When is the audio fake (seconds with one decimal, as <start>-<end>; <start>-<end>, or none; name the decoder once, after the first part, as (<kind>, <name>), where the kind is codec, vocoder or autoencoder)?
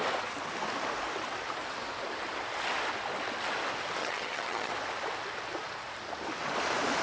4.0-4.7 (vocoder, HiFi-GAN)